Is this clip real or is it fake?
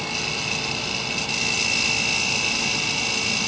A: real